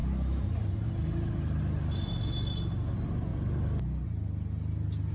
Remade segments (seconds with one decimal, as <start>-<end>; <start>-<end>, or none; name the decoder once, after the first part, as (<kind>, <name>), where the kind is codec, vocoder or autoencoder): none